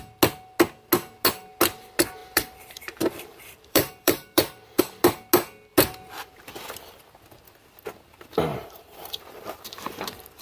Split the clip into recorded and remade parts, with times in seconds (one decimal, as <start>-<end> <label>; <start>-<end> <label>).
0.0-2.2 recorded; 2.2-4.8 remade; 4.8-8.5 recorded; 8.5-10.4 remade